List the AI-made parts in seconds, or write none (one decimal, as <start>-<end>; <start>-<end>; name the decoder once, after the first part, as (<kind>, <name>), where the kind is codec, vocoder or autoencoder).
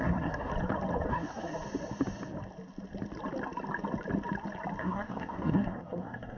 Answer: 0.0-0.5 (codec, SNAC); 1.1-1.5; 4.8-6.4